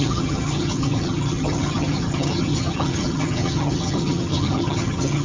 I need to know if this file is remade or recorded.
remade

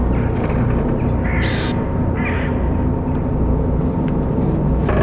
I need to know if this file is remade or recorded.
recorded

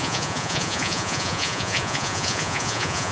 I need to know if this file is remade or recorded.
remade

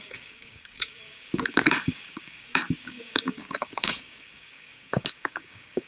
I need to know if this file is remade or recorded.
remade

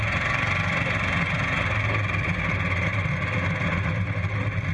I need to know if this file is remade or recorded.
recorded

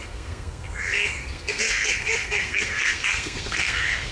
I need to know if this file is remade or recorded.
remade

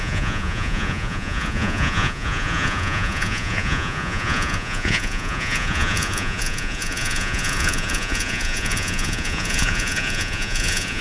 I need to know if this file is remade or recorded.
remade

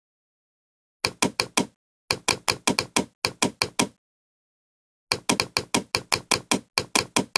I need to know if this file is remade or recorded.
recorded